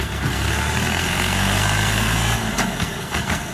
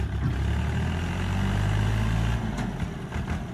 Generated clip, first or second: first